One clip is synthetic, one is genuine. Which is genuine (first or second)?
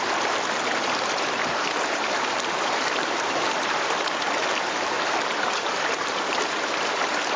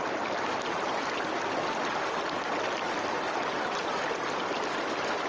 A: second